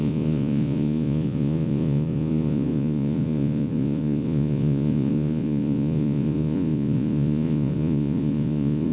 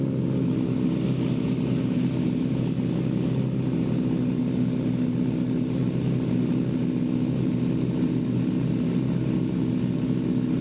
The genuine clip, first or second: second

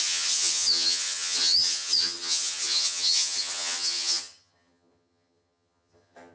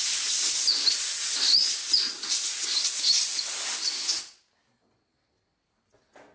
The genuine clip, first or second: second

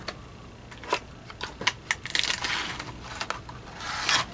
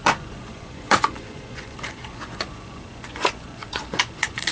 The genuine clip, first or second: first